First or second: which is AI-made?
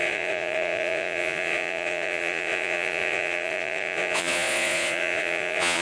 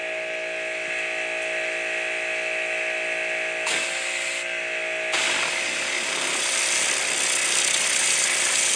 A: first